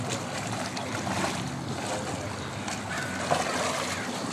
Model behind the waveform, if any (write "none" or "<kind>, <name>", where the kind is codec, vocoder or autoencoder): none